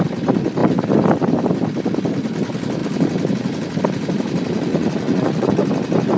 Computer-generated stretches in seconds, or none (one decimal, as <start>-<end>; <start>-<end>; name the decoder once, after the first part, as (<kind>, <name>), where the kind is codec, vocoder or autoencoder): 4.7-5.5 (vocoder, Vocos)